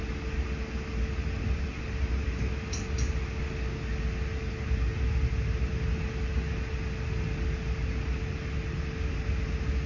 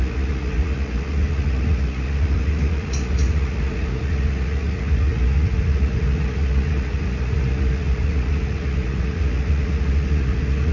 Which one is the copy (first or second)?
second